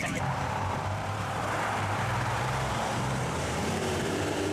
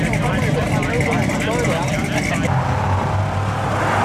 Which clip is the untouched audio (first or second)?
second